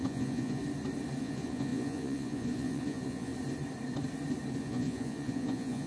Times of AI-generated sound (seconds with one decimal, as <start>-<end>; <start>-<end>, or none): 0.0-0.6; 1.2-3.3; 4.6-5.9